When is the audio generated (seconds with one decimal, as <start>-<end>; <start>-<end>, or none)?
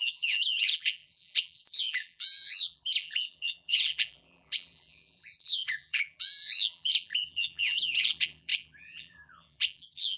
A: 0.0-10.2